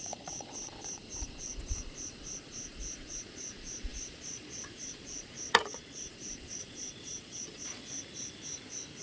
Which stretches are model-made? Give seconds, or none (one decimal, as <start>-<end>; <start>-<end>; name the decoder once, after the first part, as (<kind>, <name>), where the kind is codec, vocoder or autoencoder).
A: 0.0-7.9 (vocoder, Vocos)